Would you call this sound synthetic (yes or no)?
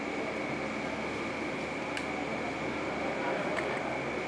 no